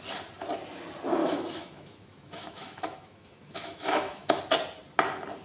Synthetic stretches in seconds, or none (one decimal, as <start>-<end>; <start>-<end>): 1.2-4.4